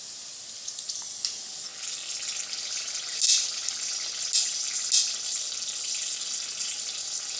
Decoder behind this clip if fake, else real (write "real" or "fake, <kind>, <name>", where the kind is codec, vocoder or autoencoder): real